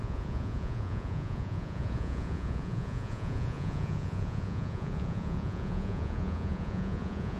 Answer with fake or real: fake